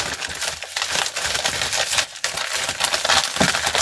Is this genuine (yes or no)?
yes